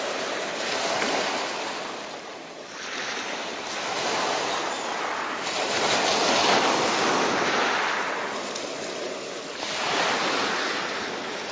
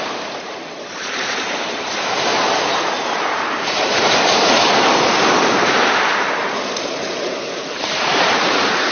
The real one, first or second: first